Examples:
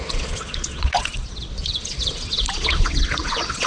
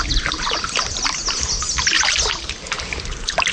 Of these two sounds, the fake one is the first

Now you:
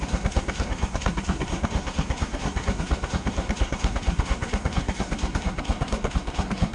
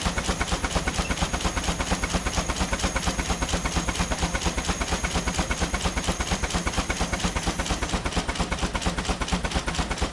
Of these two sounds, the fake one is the first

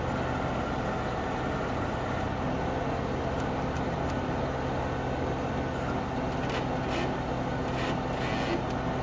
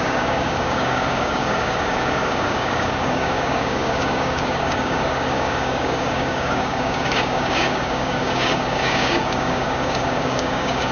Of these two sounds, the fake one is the second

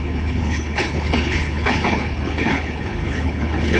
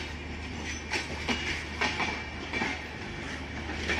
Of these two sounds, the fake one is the first